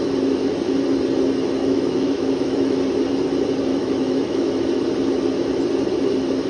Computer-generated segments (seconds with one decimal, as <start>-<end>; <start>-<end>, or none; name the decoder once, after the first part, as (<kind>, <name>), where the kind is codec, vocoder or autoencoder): 1.6-2.8 (autoencoder, DAC-VAE); 3.7-4.5